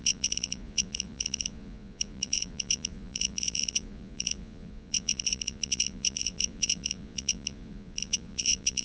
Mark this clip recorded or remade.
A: remade